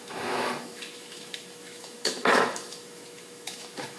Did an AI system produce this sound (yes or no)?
yes